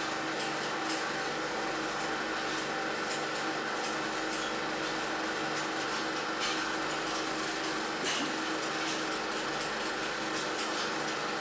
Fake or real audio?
real